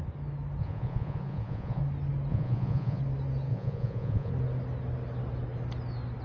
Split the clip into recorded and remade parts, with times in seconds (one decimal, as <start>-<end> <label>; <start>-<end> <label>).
0.0-0.6 recorded; 0.6-1.8 remade; 1.8-2.3 recorded; 2.3-3.0 remade; 3.0-3.5 recorded; 3.5-4.3 remade; 4.3-6.2 recorded

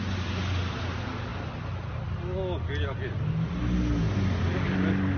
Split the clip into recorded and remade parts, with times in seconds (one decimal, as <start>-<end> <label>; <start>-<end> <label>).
0.0-5.2 recorded

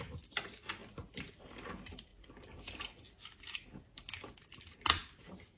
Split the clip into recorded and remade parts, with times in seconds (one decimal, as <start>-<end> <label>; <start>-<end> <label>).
0.0-0.8 remade; 0.8-1.3 recorded; 1.3-2.1 remade; 2.1-4.6 recorded; 4.6-5.6 remade

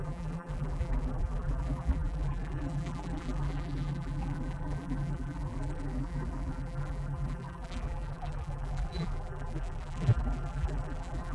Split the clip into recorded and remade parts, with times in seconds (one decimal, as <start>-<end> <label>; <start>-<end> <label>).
0.0-11.3 remade

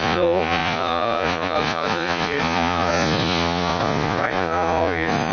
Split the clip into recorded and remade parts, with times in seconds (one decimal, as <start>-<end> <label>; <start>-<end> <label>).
0.0-5.3 remade

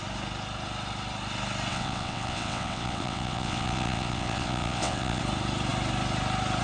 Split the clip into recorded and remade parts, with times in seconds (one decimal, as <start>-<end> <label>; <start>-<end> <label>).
0.0-1.7 recorded; 1.7-5.2 remade; 5.2-6.6 recorded